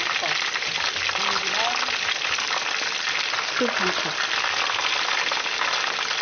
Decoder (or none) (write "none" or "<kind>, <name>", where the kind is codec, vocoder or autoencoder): none